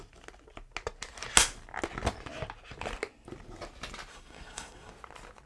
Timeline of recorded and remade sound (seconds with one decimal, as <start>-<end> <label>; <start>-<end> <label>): 0.0-4.1 recorded; 4.1-4.9 remade; 4.9-5.5 recorded